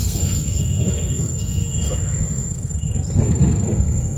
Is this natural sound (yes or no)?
no